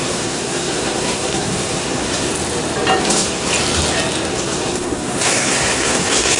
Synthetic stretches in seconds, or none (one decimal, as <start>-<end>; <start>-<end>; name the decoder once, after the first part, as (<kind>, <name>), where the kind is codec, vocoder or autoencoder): 0.0-2.3 (codec, SNAC); 3.0-3.5; 4.3-6.4